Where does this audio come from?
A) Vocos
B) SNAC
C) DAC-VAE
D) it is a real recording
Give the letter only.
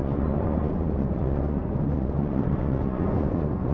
A